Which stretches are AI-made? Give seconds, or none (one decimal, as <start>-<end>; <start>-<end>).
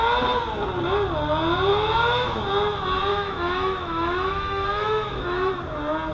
1.7-2.5; 3.1-5.5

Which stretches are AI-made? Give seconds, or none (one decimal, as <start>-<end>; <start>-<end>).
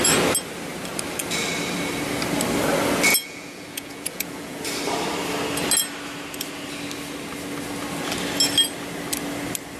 3.1-4.6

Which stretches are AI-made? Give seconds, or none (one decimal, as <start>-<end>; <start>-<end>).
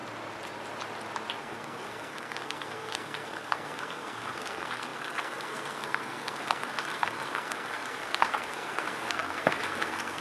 1.4-10.2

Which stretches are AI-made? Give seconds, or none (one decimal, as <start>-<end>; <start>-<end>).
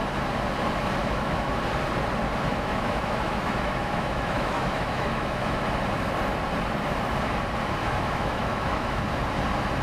1.0-1.6; 2.5-5.6; 7.8-9.0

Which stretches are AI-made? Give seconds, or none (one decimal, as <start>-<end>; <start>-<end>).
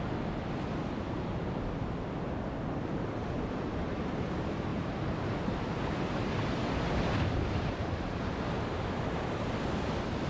2.8-3.9